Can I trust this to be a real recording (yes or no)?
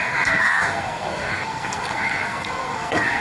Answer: no